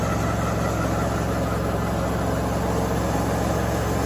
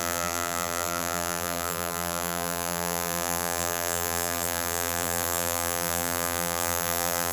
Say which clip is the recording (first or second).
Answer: first